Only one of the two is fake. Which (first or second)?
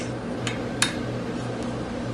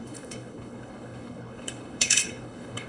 second